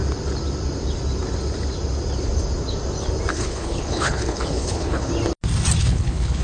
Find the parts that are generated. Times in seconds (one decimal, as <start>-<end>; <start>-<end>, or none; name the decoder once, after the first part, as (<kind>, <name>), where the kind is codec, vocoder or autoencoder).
3.3-5.1 (codec, HILCodec); 5.8-6.4